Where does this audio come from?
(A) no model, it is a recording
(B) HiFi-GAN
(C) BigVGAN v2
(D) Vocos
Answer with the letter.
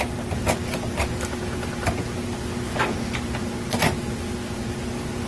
A